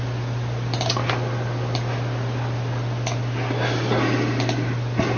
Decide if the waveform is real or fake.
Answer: real